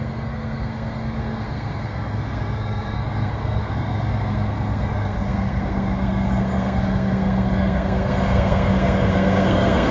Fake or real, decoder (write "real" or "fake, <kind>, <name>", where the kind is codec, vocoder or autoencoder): fake, codec, SNAC